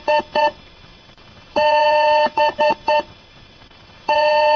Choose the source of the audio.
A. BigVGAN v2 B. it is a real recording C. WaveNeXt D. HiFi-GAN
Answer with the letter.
C